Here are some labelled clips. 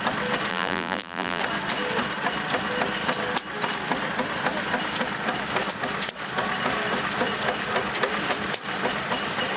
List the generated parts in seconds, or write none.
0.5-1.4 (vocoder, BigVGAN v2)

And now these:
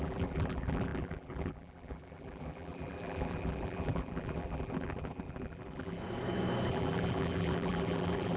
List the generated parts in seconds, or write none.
0.0-6.0 (vocoder, BigVGAN v2); 6.7-8.4